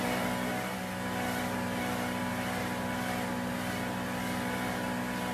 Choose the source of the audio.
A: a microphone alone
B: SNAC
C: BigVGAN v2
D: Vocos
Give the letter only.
A